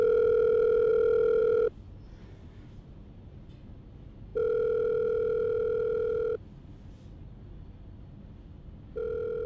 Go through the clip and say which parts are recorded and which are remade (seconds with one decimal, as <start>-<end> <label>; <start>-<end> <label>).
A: 0.0-9.5 recorded

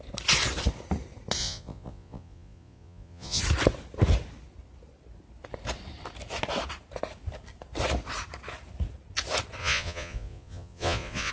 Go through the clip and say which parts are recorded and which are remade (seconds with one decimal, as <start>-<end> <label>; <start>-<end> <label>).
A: 0.0-1.4 recorded; 1.4-3.4 remade; 3.4-9.6 recorded; 9.6-11.3 remade

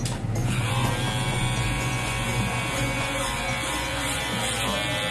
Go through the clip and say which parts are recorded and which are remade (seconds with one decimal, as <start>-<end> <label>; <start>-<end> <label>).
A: 0.0-0.4 recorded; 0.4-0.9 remade; 0.9-1.3 recorded; 1.3-4.4 remade; 4.4-5.1 recorded

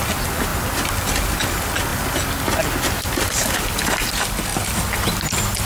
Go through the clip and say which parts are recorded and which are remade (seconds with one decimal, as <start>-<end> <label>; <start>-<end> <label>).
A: 0.0-5.7 recorded

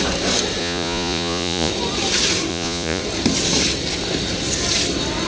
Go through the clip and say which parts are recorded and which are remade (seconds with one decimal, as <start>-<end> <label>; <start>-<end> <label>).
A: 0.0-0.6 recorded; 0.6-1.7 remade; 1.7-2.5 recorded; 2.5-3.0 remade; 3.0-5.3 recorded

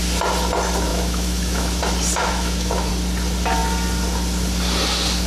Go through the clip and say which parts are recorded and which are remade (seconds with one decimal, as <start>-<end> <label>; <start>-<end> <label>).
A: 0.0-0.9 recorded; 0.9-1.8 remade; 1.8-2.2 recorded; 2.2-2.9 remade; 2.9-5.3 recorded